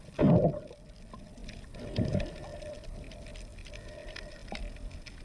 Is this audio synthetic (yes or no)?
no